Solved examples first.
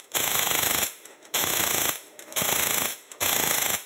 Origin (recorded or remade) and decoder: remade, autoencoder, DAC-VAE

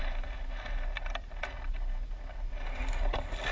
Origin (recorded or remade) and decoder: recorded